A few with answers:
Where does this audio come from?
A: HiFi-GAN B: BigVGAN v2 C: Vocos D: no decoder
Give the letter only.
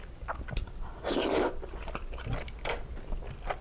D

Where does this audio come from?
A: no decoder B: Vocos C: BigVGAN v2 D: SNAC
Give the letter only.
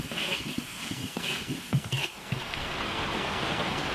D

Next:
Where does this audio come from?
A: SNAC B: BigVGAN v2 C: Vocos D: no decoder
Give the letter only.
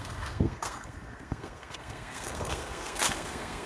A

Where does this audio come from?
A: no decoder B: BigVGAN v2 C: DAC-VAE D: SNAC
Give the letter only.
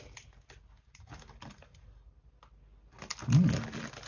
A